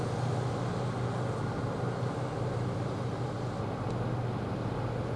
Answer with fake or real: real